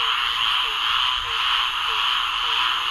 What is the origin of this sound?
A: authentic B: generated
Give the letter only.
A